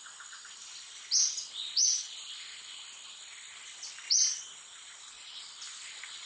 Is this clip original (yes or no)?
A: yes